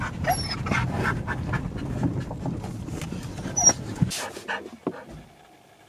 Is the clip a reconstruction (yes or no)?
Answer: no